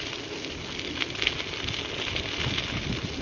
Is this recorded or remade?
recorded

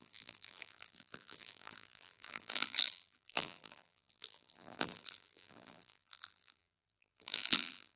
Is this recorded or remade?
remade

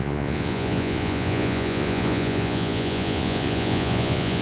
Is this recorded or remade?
remade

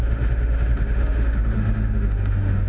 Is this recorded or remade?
remade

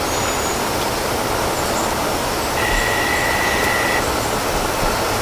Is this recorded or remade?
recorded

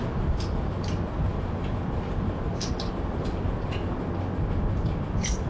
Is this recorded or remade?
recorded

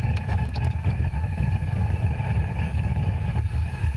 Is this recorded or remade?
remade